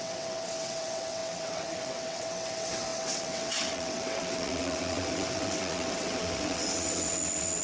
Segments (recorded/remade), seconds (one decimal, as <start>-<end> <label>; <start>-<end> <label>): 0.0-7.6 remade